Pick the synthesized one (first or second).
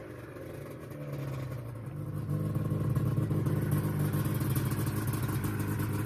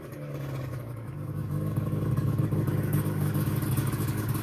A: second